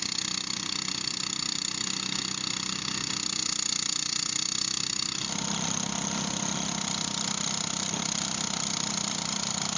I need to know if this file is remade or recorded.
recorded